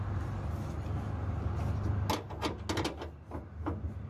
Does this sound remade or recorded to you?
recorded